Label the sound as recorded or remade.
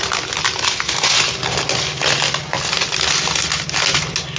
recorded